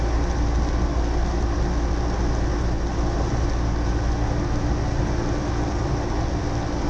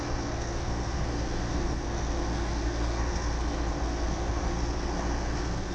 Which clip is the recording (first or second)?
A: first